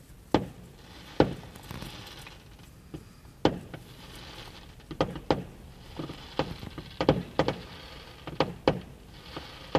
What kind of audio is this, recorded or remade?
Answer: recorded